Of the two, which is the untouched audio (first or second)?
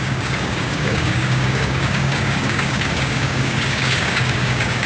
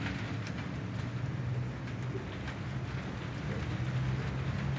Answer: second